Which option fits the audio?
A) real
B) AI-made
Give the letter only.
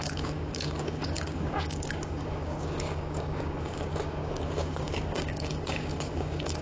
B